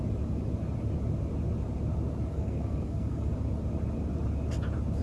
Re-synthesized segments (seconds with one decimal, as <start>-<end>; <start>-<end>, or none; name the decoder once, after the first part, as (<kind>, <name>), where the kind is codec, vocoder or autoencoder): 2.3-3.3 (codec, SNAC)